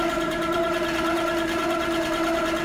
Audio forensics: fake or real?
fake